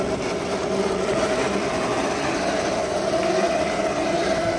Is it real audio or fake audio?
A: real